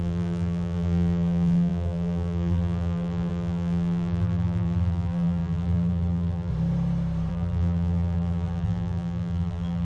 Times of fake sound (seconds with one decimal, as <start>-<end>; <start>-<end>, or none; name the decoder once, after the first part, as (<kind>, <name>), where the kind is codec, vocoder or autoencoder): 0.0-6.5 (vocoder, BigVGAN v2); 7.3-9.8